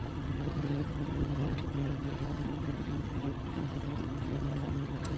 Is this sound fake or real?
fake